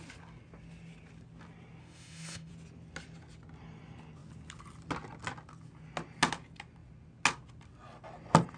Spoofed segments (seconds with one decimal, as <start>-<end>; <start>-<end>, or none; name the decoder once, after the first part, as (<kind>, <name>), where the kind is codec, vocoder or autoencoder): 1.8-2.5 (autoencoder, DAC-VAE)